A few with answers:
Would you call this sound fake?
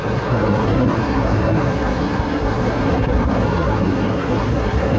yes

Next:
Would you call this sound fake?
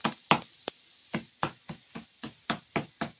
no